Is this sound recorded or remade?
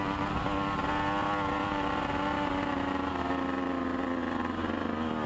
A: recorded